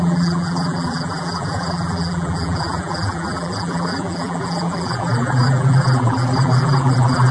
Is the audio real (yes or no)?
no